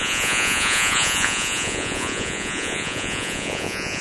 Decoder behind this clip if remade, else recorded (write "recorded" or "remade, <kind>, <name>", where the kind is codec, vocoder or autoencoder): remade, vocoder, Vocos